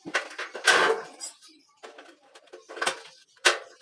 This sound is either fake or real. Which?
real